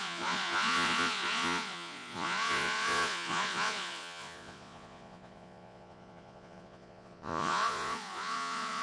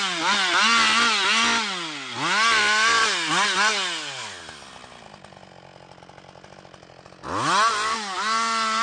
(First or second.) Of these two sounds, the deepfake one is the first